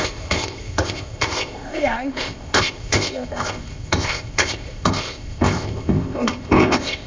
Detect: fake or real fake